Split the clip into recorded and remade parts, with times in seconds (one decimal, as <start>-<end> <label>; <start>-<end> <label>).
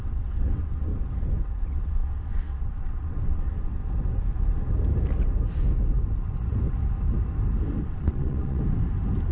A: 0.0-0.9 remade; 0.9-1.6 recorded; 1.6-3.8 remade; 3.8-7.8 recorded; 7.8-8.6 remade; 8.6-9.3 recorded